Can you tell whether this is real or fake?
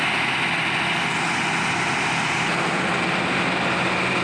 real